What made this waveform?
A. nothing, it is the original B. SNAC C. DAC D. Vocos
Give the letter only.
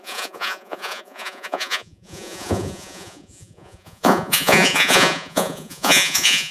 D